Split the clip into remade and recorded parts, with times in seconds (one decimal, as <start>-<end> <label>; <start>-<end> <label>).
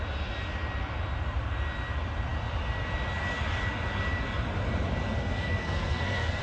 0.0-5.2 recorded; 5.2-6.4 remade